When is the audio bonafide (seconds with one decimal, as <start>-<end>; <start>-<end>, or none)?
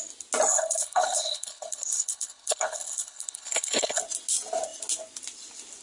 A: 0.0-0.5; 4.0-5.8